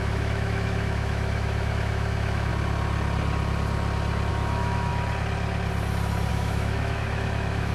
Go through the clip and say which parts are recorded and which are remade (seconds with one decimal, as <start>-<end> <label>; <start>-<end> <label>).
0.0-2.5 remade; 2.5-4.3 recorded; 4.3-4.9 remade; 4.9-6.3 recorded; 6.3-7.7 remade